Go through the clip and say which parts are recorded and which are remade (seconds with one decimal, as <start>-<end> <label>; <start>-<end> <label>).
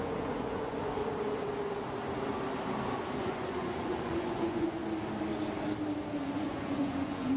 0.0-1.0 remade; 1.0-3.2 recorded; 3.2-4.8 remade; 4.8-6.2 recorded; 6.2-7.4 remade